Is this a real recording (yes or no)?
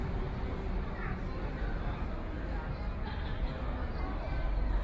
yes